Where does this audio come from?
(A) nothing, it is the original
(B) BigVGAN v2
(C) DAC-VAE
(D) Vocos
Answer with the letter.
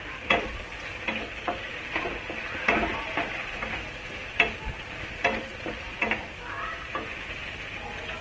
A